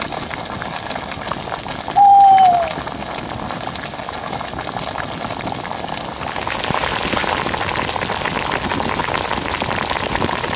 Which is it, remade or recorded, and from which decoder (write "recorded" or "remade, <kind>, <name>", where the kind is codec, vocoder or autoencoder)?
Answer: recorded